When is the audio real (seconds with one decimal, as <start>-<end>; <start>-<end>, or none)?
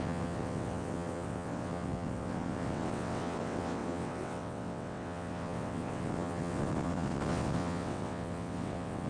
none